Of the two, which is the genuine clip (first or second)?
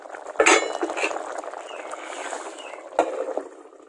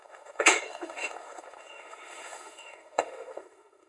first